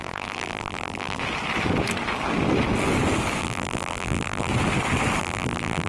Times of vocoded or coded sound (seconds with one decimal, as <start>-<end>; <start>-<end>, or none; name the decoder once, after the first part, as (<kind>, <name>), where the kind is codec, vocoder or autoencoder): 0.0-1.2 (vocoder, BigVGAN v2); 3.4-4.5; 5.2-5.9